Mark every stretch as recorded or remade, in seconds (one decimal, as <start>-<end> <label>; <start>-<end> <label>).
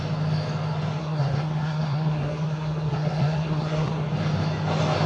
0.0-1.0 recorded; 1.0-4.1 remade; 4.1-5.1 recorded